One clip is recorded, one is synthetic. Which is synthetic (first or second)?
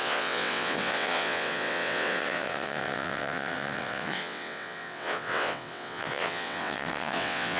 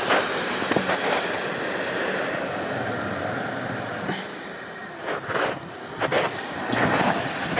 first